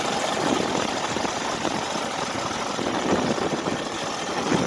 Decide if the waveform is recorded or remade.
remade